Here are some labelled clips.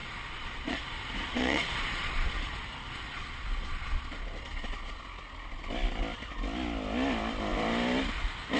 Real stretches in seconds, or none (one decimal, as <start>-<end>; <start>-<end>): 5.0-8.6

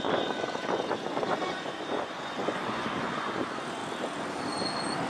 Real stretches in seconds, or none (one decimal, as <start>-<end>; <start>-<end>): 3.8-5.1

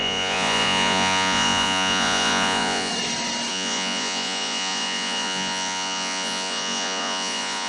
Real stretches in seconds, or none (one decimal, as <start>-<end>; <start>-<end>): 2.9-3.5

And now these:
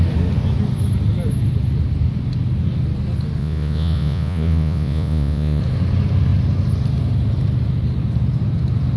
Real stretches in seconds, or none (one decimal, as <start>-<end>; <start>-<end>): 0.0-3.4; 5.6-9.0

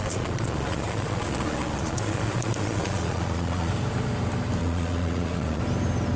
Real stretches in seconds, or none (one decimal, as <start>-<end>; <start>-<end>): 3.7-4.6; 5.6-6.2

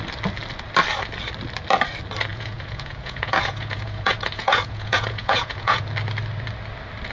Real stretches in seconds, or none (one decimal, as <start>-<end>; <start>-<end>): 0.0-2.3; 5.8-7.1